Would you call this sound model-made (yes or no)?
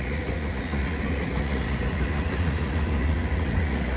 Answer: yes